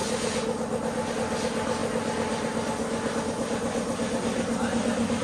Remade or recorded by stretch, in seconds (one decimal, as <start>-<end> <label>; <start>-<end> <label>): 0.0-5.2 recorded